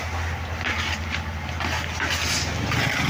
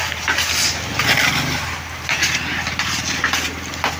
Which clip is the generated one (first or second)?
second